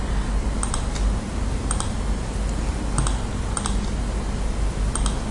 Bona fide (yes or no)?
yes